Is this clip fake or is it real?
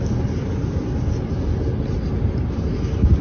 real